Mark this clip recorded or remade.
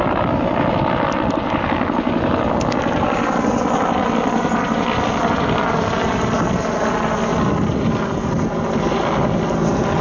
recorded